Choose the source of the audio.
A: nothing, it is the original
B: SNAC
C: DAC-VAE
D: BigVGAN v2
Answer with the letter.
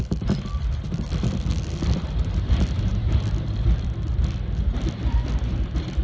D